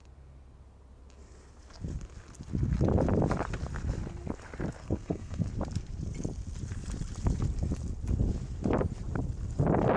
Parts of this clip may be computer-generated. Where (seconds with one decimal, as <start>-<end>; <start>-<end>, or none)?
4.8-5.5